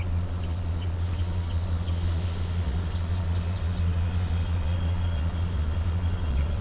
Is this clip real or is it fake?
fake